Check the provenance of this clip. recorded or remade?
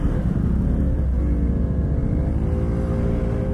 recorded